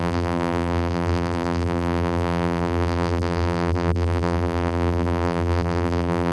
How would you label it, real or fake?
fake